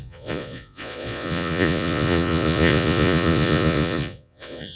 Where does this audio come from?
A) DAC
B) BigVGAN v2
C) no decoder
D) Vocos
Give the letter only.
D